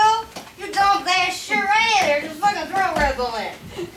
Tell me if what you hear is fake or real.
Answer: real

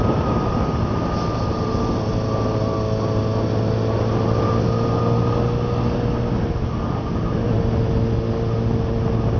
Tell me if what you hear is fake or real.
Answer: real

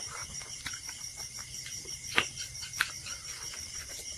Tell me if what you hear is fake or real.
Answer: fake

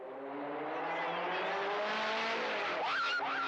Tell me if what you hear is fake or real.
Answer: real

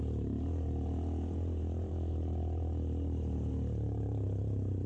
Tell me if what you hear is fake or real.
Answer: fake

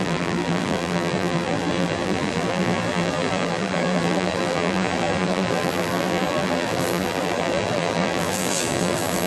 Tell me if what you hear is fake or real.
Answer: fake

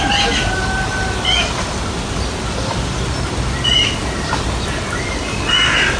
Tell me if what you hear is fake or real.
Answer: real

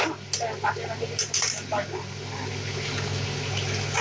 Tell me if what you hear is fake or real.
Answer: real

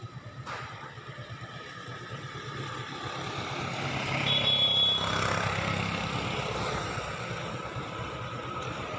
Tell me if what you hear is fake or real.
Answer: fake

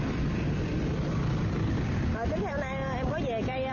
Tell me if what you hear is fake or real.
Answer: fake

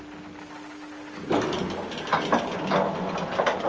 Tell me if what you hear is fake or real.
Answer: real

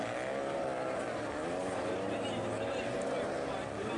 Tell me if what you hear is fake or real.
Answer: real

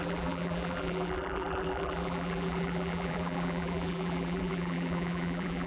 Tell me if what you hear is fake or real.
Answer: fake